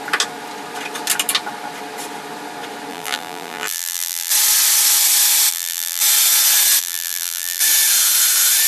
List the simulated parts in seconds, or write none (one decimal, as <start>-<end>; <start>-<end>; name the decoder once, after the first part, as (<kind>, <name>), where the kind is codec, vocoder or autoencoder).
2.9-4.3 (vocoder, BigVGAN v2); 5.5-6.0; 6.8-7.6